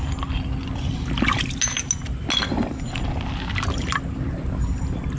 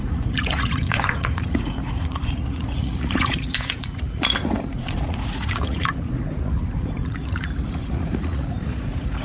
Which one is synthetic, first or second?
second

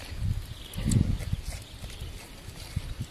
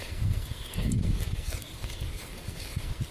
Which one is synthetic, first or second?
second